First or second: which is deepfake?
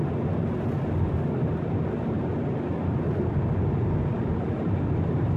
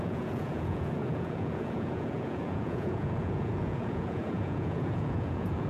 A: second